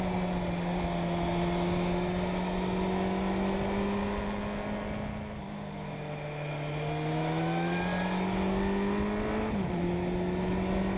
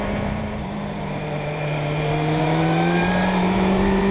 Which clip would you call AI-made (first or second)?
second